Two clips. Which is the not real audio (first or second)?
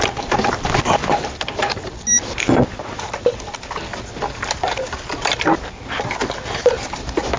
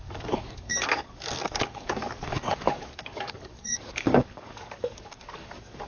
second